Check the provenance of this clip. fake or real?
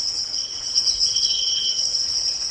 fake